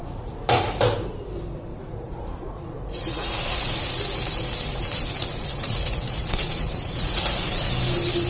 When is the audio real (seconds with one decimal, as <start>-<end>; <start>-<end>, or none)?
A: 0.8-1.7; 3.9-5.1; 7.7-8.3